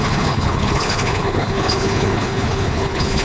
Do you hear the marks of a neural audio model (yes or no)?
yes